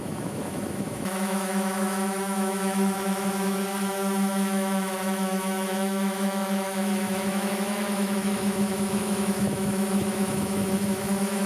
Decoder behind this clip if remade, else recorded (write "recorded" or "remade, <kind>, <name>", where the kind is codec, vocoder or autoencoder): remade, autoencoder, DAC-VAE